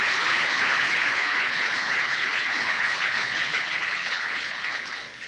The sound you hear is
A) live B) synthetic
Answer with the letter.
B